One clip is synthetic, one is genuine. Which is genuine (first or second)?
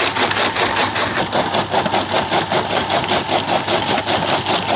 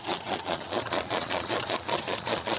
first